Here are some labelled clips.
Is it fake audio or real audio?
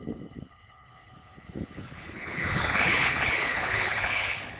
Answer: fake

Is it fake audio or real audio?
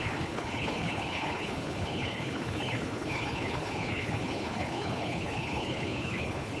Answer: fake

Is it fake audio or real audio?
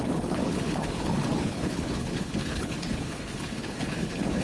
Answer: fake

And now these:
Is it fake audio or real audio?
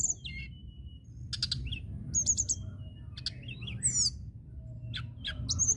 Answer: real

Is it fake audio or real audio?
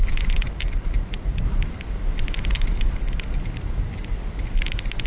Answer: real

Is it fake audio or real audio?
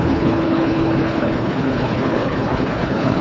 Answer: fake